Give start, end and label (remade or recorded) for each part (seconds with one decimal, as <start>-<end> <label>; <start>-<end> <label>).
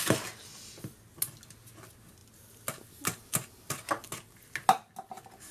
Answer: 0.0-5.5 recorded